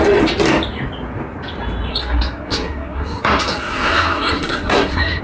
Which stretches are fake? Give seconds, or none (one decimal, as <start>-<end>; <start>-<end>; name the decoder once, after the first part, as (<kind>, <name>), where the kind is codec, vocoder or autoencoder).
1.9-5.2 (codec, SNAC)